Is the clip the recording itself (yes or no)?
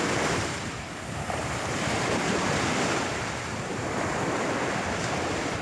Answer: no